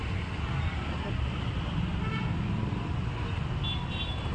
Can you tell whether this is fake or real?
real